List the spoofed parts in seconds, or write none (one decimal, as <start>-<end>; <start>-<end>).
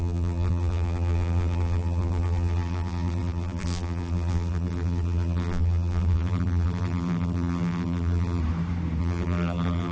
0.0-8.4; 9.0-9.9